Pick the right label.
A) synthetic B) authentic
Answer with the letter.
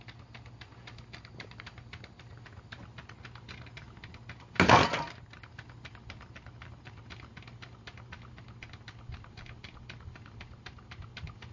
B